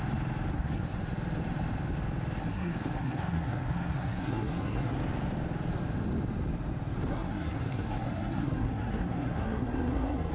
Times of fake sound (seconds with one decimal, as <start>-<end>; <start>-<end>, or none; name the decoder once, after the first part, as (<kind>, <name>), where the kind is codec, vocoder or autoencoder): 0.5-1.0 (codec, SNAC); 2.4-4.9; 7.1-10.3

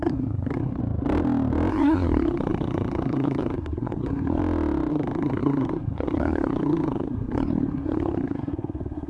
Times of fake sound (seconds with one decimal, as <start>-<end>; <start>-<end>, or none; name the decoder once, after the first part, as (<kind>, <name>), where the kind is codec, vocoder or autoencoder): 0.0-0.8 (codec, SNAC); 1.7-4.4; 4.9-9.1

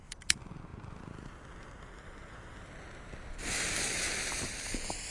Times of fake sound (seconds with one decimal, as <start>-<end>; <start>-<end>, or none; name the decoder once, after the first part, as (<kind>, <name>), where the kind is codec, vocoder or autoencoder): none

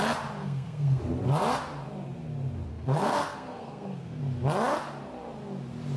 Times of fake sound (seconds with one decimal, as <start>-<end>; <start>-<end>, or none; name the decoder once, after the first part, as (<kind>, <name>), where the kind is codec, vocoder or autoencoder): 0.4-1.0 (codec, SNAC); 2.7-4.2

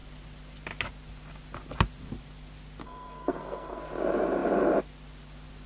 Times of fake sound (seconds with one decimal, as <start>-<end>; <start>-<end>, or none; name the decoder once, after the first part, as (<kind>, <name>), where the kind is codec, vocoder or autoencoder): 2.8-3.8 (codec, SNAC)

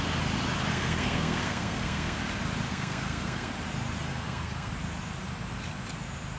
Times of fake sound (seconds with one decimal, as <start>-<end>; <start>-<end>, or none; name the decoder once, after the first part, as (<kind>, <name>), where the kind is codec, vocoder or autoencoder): 0.7-2.2 (codec, SNAC); 2.7-3.5; 4.1-4.7

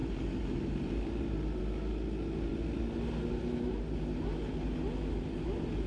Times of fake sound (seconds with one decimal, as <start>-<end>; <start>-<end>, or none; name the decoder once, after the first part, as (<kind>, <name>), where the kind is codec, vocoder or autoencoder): none

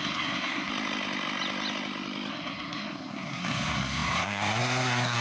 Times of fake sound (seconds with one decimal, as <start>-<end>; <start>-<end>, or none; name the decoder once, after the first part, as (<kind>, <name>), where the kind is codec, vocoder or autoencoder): 0.0-0.7 (codec, SNAC); 2.3-5.2